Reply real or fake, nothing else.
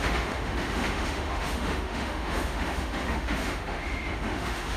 fake